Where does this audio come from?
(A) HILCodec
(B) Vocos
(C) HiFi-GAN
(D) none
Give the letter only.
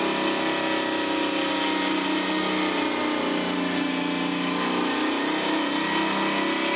D